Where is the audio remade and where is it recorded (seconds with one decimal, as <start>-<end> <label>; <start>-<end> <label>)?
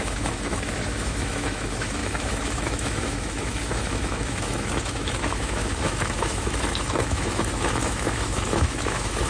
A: 0.0-9.3 remade